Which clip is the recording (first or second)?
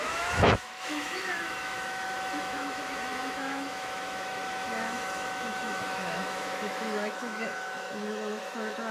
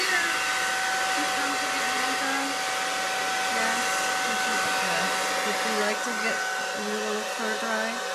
second